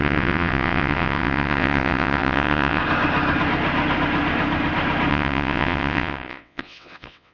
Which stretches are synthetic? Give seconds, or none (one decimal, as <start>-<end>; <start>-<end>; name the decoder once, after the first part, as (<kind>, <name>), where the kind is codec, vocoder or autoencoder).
0.0-2.8 (vocoder, WaveNeXt); 5.1-7.3